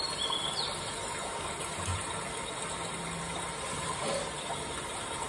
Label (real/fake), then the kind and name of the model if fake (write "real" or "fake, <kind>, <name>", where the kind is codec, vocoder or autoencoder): fake, vocoder, BigVGAN v2